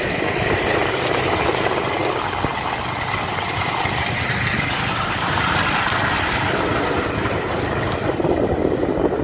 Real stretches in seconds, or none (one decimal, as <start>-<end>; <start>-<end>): 0.0-9.2